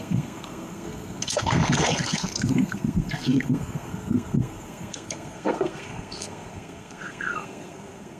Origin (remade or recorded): remade